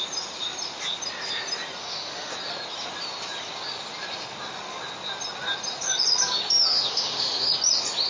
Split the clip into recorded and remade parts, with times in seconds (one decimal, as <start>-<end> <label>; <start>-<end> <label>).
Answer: 0.0-1.8 recorded; 1.8-2.3 remade; 2.3-6.7 recorded; 6.7-7.5 remade; 7.5-8.1 recorded